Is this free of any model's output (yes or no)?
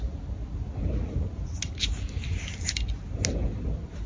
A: yes